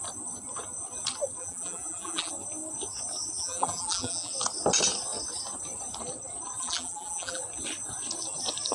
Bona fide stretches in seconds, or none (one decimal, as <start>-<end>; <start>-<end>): 0.0-1.4; 2.3-3.4; 4.3-6.6; 7.4-8.7